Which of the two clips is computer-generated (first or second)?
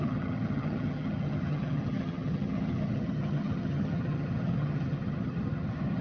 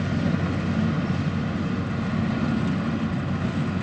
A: first